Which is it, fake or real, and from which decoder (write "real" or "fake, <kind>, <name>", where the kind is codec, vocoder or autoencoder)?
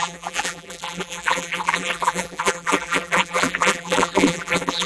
fake, vocoder, BigVGAN v2